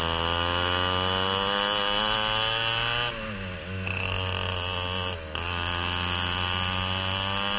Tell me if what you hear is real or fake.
real